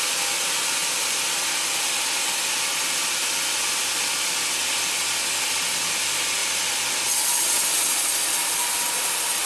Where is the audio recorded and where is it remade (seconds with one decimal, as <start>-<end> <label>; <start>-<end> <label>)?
0.0-9.5 recorded